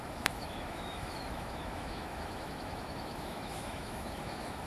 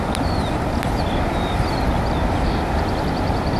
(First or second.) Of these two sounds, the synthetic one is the first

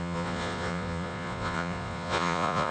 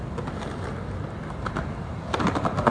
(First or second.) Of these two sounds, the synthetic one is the first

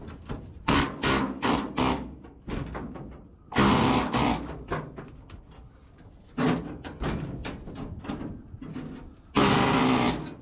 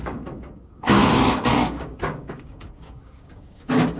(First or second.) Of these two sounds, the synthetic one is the second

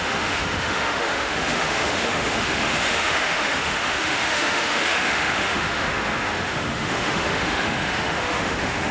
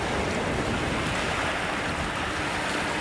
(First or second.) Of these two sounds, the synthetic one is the first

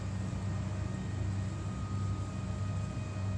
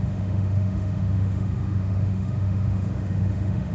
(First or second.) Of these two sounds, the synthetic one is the second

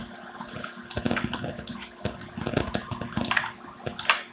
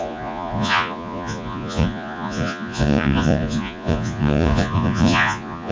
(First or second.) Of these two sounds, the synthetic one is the second